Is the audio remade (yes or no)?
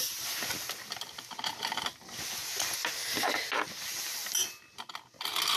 no